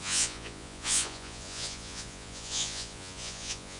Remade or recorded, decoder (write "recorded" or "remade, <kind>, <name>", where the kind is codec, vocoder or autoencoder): remade, vocoder, Vocos